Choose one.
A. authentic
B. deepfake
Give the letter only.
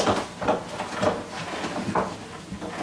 A